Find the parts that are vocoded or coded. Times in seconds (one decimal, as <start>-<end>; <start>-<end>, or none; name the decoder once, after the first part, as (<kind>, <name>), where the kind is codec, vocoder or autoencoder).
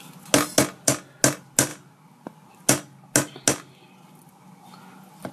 none